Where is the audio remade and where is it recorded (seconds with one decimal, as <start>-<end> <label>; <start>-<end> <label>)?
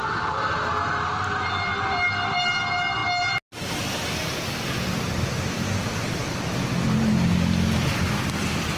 0.0-8.8 recorded